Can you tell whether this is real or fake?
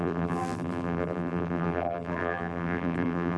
fake